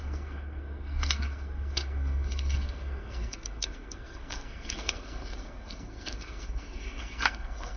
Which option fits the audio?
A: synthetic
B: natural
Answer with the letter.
A